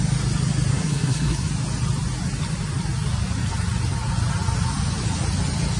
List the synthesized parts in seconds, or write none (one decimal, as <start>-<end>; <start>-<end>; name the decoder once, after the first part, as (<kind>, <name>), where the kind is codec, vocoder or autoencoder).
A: 0.7-1.5 (codec, SNAC)